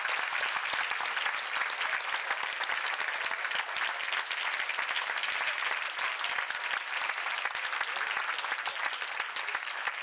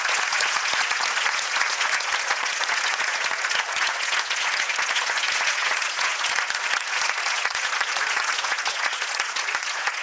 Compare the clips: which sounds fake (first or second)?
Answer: second